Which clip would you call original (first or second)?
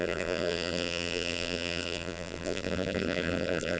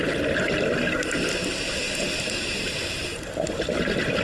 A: second